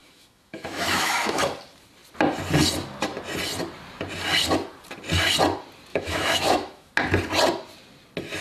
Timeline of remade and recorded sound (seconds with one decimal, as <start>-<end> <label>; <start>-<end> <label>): 0.0-1.4 remade; 1.4-5.9 recorded; 5.9-6.9 remade; 6.9-8.4 recorded